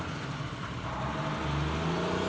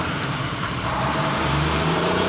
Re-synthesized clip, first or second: second